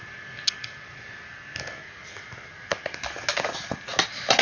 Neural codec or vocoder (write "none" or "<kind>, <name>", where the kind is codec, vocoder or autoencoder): none